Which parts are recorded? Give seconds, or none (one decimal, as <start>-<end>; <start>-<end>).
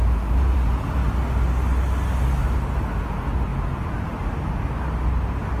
1.0-3.0; 3.5-5.6